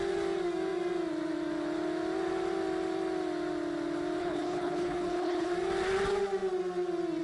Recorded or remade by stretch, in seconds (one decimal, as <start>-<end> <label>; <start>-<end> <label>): 0.0-4.2 recorded; 4.2-5.5 remade; 5.5-7.2 recorded